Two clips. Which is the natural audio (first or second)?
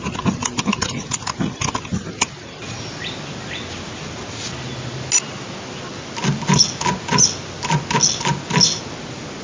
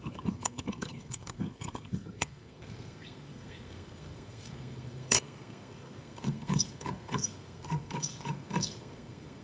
first